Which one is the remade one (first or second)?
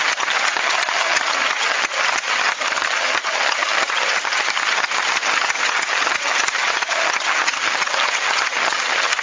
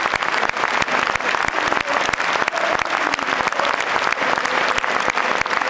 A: first